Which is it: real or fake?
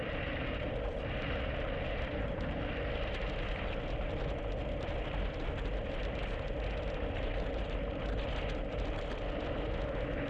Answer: real